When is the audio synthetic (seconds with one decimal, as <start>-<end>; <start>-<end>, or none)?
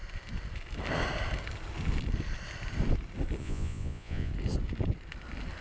3.4-4.3